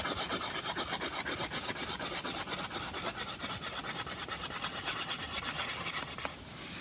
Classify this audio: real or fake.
fake